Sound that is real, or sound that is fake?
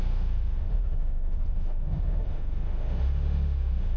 fake